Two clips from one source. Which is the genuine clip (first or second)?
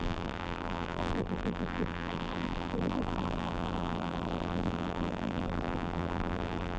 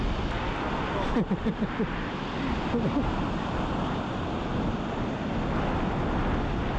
second